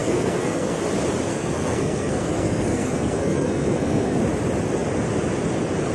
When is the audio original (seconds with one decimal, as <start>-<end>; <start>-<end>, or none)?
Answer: 0.8-1.3; 4.2-5.9